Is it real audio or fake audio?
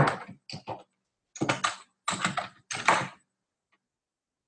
real